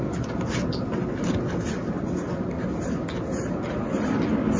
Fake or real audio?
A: real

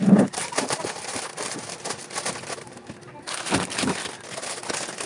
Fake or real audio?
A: real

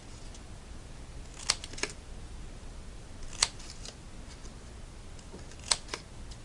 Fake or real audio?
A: real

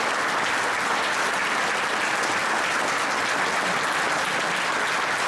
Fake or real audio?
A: real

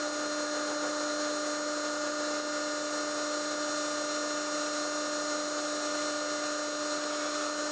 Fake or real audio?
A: real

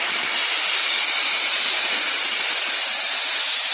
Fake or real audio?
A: fake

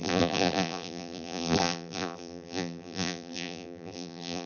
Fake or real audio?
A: fake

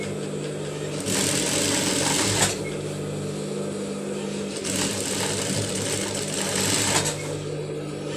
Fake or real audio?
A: real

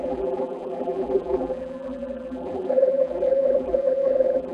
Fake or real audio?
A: fake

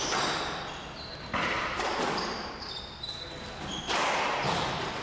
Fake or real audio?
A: fake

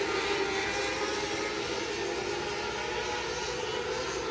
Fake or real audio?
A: real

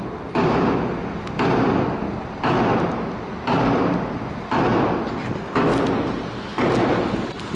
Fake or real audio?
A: real